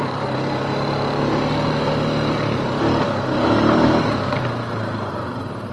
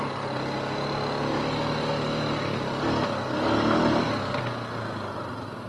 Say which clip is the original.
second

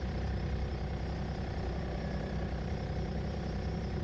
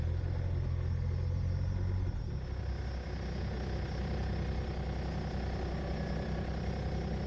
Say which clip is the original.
second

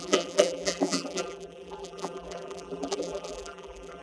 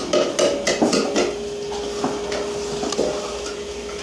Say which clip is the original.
second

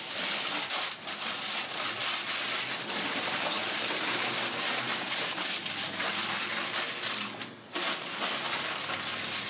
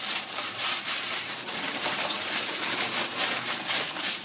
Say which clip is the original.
first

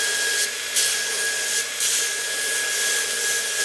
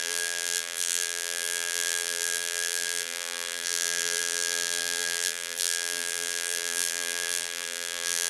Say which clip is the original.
first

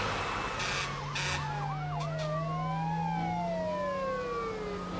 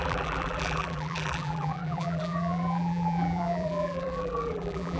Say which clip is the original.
first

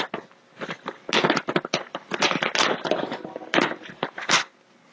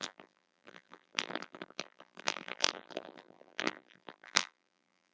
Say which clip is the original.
first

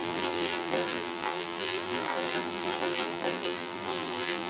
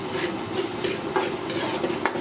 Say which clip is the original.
second